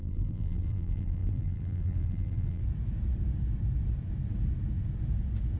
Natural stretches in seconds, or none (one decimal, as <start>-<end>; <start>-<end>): 2.6-5.6